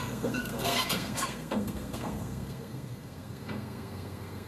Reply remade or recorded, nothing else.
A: remade